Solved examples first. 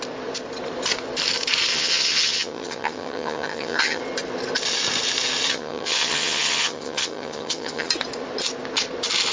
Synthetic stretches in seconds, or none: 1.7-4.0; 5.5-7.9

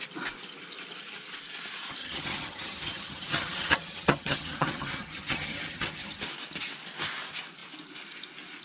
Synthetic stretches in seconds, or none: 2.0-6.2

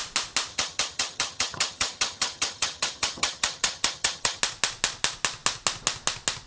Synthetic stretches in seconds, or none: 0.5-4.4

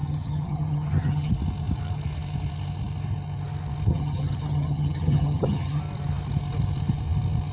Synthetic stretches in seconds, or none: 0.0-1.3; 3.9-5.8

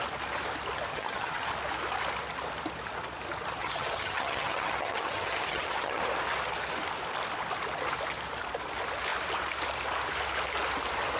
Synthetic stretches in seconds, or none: 0.9-1.5; 3.6-6.0